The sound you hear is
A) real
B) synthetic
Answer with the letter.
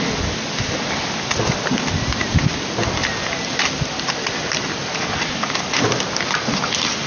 A